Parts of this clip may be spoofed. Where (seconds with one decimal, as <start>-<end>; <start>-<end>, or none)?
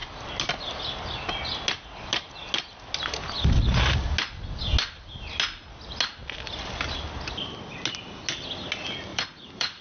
9.1-9.8